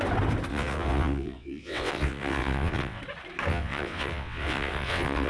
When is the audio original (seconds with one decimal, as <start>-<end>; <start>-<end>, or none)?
0.0-0.5; 3.0-3.5